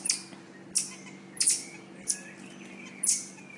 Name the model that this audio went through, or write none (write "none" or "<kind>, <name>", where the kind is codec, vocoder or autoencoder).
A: none